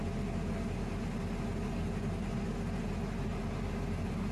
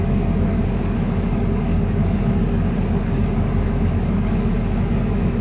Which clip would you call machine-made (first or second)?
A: second